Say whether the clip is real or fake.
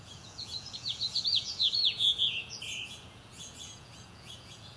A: fake